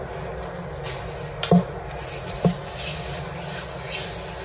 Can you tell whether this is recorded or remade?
recorded